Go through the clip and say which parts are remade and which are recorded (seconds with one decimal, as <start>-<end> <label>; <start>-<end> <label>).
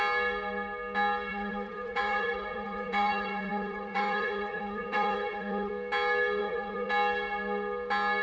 0.0-1.3 recorded; 1.3-5.7 remade; 5.7-6.4 recorded; 6.4-6.9 remade; 6.9-8.2 recorded